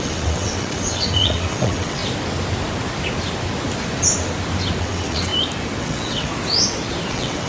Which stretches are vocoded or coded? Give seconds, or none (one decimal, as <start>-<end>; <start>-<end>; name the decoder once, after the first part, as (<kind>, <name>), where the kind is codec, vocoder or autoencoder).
0.0-2.0 (vocoder, WaveNeXt); 4.8-5.3; 5.8-6.3; 7.1-7.5